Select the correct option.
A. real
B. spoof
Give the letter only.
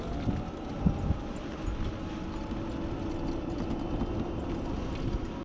A